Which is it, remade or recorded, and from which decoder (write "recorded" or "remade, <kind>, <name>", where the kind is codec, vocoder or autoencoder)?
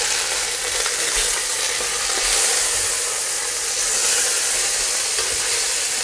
recorded